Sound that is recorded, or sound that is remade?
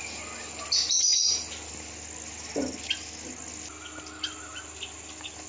recorded